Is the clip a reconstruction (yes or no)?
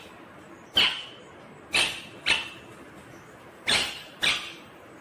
no